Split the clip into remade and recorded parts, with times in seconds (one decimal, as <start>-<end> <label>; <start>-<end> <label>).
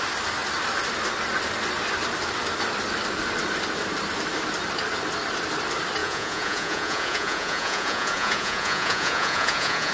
0.0-6.0 recorded; 6.0-9.9 remade